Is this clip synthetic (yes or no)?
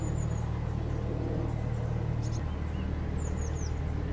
no